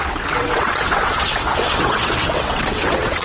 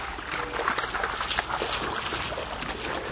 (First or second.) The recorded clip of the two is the second